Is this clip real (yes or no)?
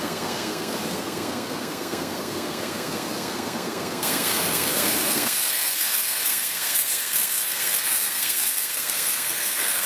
no